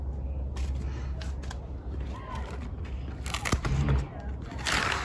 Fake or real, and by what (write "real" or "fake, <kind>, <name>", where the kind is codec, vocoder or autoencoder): real